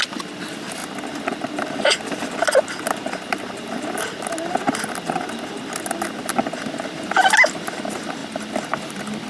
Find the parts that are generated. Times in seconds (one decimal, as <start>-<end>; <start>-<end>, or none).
none